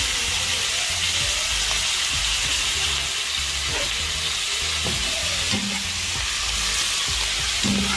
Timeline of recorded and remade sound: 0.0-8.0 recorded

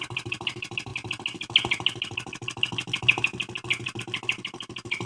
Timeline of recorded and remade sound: 0.0-5.1 recorded

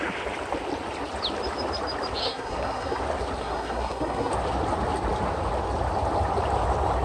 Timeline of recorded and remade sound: 0.0-2.2 recorded; 2.2-3.0 remade; 3.0-3.4 recorded; 3.4-4.3 remade; 4.3-7.0 recorded

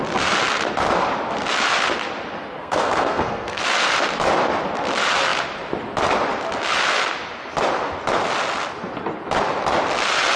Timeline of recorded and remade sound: 0.0-2.6 recorded; 2.6-3.6 remade; 3.6-10.4 recorded

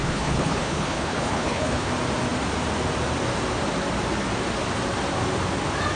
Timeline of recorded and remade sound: 0.0-1.9 remade; 1.9-6.0 recorded

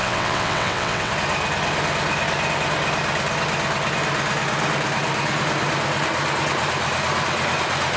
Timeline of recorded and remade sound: 0.0-1.1 remade; 1.1-8.0 recorded

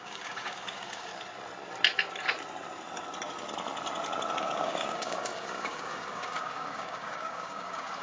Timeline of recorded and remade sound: 0.0-1.1 remade; 1.1-4.4 recorded; 4.4-8.0 remade

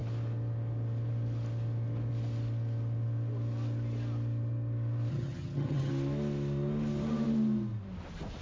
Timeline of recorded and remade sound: 0.0-5.1 recorded; 5.1-5.9 remade; 5.9-8.4 recorded